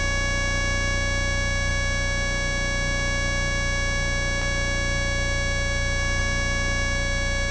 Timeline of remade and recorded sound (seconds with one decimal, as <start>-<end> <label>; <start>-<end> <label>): 0.0-7.5 recorded